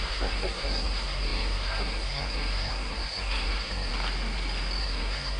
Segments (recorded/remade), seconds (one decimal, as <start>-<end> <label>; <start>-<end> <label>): 0.0-3.9 remade; 3.9-4.8 recorded; 4.8-5.4 remade